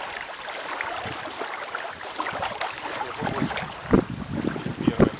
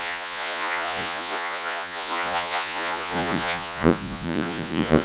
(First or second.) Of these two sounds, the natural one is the first